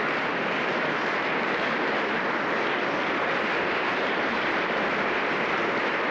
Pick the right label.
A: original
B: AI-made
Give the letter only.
A